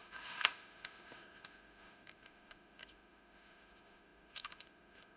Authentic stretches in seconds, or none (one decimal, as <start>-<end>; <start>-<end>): none